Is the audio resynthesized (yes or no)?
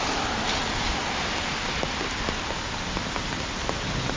no